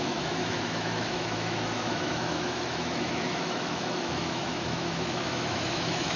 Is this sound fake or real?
fake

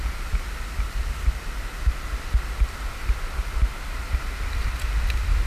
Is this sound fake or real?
real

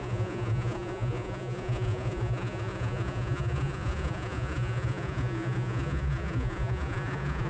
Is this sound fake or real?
fake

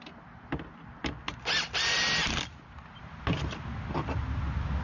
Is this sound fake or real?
real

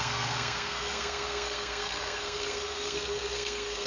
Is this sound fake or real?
fake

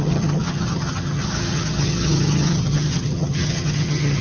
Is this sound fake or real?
fake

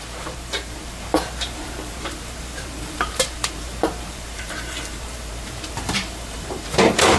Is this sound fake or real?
fake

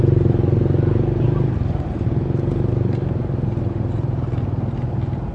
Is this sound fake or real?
real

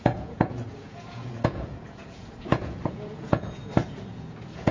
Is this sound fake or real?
fake